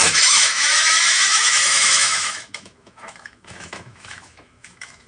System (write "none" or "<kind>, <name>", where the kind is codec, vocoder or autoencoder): autoencoder, DAC-VAE